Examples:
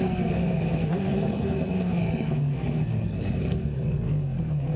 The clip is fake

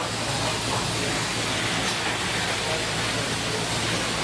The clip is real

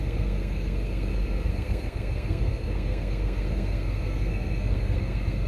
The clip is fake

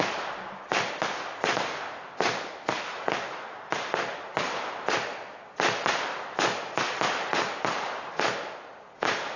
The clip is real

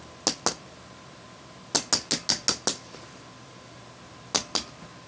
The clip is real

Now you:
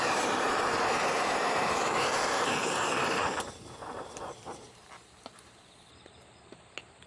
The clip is fake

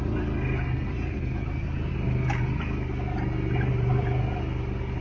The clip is real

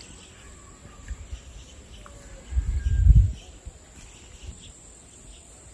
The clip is real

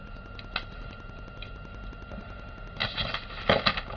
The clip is real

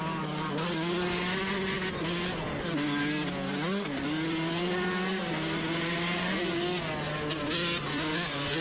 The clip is real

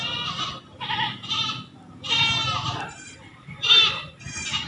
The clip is real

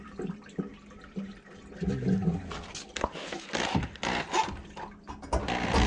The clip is real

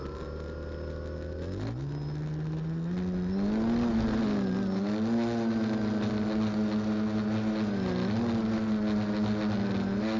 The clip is real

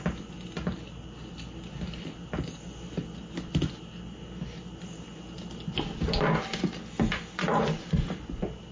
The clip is real